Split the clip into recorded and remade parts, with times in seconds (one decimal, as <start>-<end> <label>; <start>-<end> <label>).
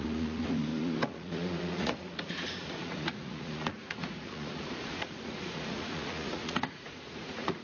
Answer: 0.0-7.6 remade